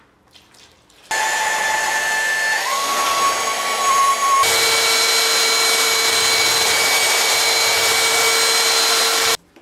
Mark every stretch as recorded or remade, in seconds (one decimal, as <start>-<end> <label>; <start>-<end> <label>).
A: 0.0-2.6 recorded; 2.6-3.2 remade; 3.2-9.6 recorded